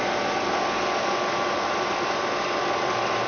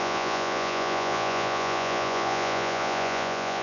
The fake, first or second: second